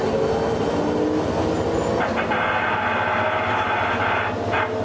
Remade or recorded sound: recorded